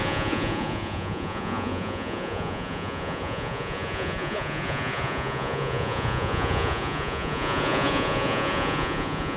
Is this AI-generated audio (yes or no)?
yes